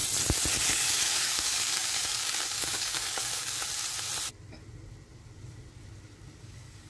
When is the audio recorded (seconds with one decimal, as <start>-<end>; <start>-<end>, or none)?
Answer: 0.0-0.7; 3.6-6.4